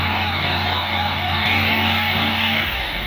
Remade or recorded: remade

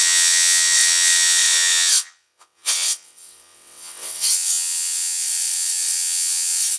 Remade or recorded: remade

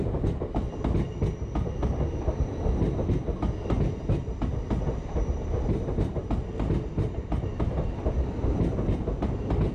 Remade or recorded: recorded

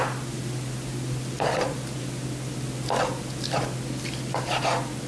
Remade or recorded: recorded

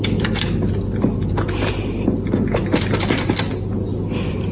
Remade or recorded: recorded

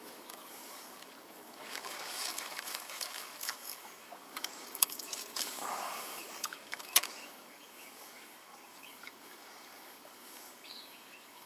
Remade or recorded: remade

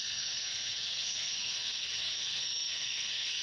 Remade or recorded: remade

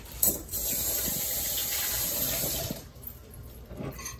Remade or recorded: remade